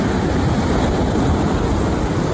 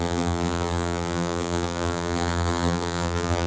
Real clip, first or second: first